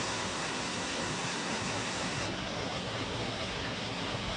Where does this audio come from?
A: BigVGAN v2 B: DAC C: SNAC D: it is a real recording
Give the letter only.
C